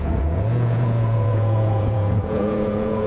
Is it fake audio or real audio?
fake